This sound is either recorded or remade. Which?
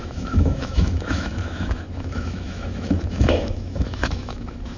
remade